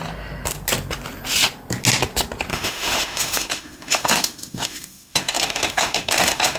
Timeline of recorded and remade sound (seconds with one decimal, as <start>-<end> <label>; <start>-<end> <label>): 0.0-2.5 recorded; 2.5-6.6 remade